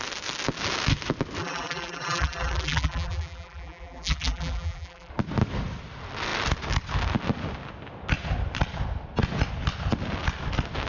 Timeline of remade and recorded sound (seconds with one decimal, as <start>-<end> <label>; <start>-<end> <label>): 0.0-1.4 recorded; 1.4-5.1 remade; 5.1-10.9 recorded